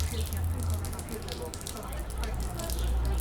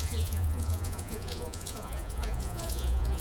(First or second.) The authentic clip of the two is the first